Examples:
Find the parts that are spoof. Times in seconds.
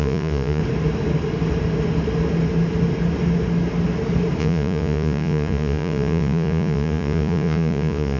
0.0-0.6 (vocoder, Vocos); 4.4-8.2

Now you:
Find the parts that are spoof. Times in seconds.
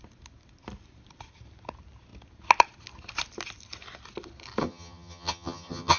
4.6-6.0 (vocoder, HiFi-GAN)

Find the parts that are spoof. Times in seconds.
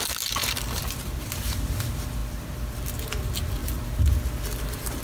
0.4-1.8 (vocoder, BigVGAN v2); 2.2-2.9; 3.6-5.0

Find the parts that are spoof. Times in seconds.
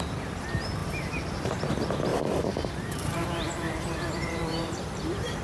0.8-1.5 (vocoder, BigVGAN v2); 2.1-5.4